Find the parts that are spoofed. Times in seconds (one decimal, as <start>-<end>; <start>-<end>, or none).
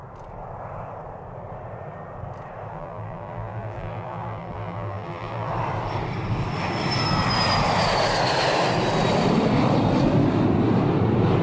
2.7-5.5